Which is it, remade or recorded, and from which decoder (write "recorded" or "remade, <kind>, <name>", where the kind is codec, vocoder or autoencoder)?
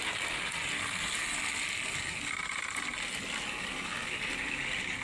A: recorded